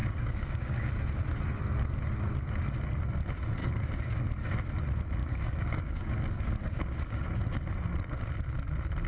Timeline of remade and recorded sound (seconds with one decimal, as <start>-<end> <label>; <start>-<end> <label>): 0.0-0.9 remade; 0.9-3.6 recorded; 3.6-4.3 remade; 4.3-5.2 recorded; 5.2-7.2 remade; 7.2-9.1 recorded